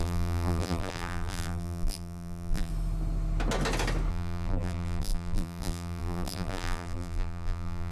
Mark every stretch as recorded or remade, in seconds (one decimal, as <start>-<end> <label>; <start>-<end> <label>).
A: 0.0-2.7 remade; 2.7-4.1 recorded; 4.1-7.9 remade

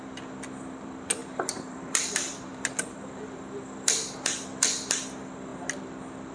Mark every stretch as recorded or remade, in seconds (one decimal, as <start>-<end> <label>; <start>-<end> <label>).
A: 0.0-1.2 recorded; 1.2-3.2 remade; 3.2-6.3 recorded

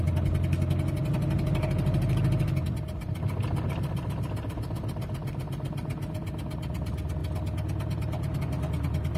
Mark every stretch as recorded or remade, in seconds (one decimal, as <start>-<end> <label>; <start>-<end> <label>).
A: 0.0-9.2 recorded